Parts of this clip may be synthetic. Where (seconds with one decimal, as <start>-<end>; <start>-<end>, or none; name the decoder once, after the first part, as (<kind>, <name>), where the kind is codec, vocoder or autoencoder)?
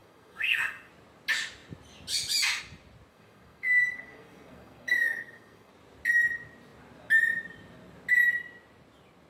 0.0-0.9 (codec, SNAC); 3.1-5.7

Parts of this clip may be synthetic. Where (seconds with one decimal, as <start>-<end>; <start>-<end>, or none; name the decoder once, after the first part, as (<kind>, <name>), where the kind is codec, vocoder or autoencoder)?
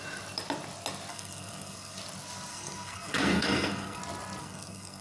1.1-2.0 (codec, SNAC); 2.5-4.0; 4.4-5.0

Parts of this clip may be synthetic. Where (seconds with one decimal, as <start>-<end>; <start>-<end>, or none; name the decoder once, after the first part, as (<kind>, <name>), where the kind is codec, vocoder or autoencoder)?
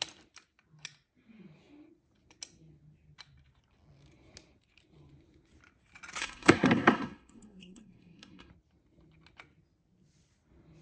6.2-8.5 (codec, SNAC)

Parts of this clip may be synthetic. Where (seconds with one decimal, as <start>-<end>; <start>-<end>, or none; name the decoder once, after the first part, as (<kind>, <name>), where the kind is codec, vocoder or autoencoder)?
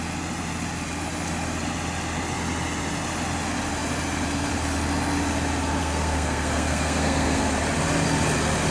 5.8-7.4 (codec, SNAC)